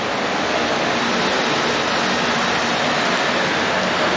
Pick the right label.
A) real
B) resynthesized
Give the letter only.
A